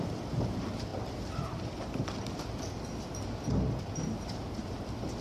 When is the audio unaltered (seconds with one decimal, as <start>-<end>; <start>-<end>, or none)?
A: 0.9-4.0